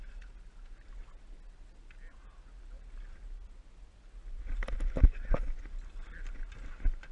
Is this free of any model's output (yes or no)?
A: yes